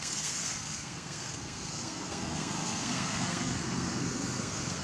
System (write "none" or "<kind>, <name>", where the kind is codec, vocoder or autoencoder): codec, SNAC